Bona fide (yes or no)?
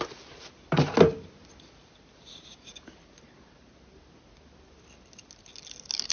yes